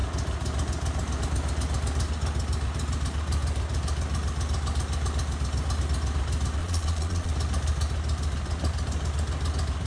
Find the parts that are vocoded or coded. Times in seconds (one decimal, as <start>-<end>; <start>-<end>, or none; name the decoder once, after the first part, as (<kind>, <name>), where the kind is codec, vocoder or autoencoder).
6.6-7.3 (vocoder, Vocos)